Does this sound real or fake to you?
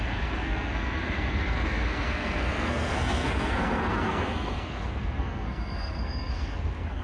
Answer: fake